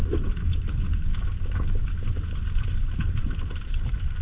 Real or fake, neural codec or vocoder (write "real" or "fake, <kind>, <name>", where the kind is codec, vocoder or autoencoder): real